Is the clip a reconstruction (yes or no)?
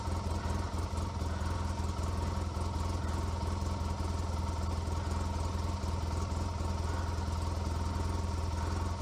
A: no